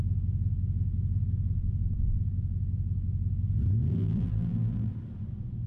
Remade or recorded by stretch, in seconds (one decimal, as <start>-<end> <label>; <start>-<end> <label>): 0.0-3.9 recorded; 3.9-4.9 remade; 4.9-5.7 recorded